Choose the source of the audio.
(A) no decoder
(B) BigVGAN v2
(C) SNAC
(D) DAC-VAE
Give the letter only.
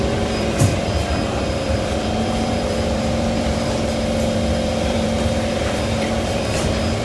B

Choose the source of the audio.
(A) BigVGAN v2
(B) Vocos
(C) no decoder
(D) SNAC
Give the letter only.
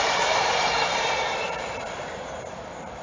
A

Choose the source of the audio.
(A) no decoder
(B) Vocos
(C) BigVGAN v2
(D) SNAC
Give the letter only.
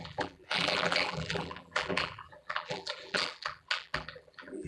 C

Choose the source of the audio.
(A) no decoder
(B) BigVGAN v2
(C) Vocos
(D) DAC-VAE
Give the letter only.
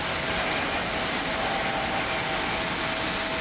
A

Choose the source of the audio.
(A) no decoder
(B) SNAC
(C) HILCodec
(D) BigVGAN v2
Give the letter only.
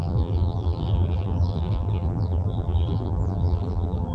D